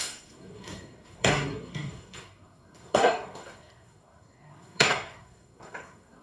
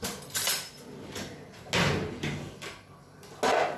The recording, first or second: second